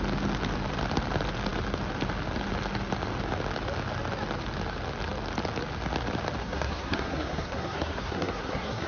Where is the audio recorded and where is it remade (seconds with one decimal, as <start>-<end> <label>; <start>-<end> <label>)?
0.0-6.4 recorded; 6.4-8.9 remade